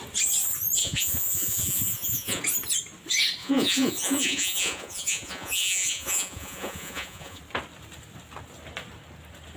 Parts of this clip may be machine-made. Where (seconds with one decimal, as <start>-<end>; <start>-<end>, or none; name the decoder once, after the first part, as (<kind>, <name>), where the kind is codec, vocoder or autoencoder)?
0.8-2.4 (vocoder, Vocos); 3.4-7.4